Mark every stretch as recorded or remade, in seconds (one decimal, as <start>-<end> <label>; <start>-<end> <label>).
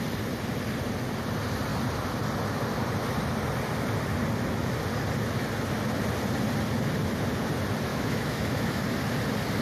0.0-7.9 recorded; 7.9-8.8 remade; 8.8-9.6 recorded